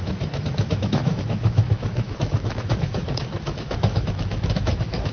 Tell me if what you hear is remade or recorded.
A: remade